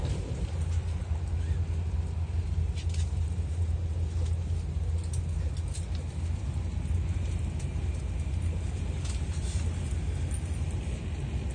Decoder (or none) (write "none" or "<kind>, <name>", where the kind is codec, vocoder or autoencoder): none